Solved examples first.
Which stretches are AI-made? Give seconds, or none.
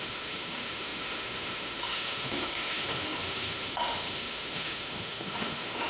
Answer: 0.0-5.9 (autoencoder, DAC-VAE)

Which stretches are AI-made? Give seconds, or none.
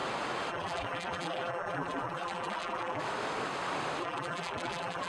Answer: 0.5-3.0 (vocoder, BigVGAN v2); 4.0-5.1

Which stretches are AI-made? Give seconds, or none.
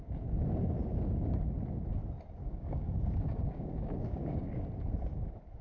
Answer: 0.9-1.4 (codec, DAC); 2.4-4.6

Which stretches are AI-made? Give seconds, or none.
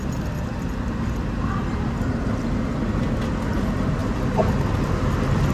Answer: none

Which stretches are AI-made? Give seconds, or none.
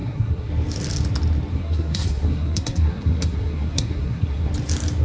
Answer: 0.0-0.5 (codec, SNAC); 1.5-4.5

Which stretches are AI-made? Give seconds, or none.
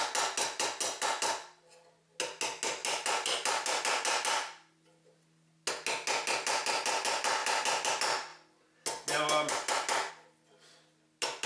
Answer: none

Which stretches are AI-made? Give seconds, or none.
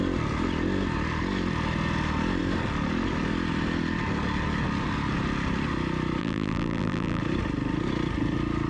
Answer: 6.2-7.2 (vocoder, BigVGAN v2)